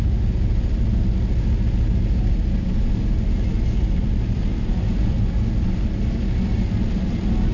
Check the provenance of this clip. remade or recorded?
recorded